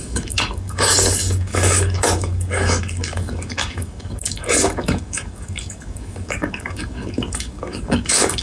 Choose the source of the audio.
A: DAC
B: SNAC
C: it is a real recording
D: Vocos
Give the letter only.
A